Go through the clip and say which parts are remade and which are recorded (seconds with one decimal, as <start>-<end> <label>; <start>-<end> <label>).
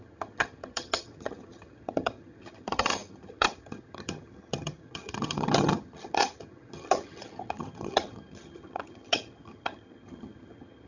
0.0-10.9 remade